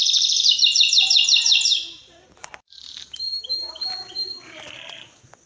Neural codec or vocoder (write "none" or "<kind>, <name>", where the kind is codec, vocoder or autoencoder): vocoder, BigVGAN v2